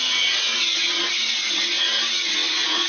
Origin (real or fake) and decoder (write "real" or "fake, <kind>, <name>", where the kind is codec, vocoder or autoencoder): fake, vocoder, WaveNeXt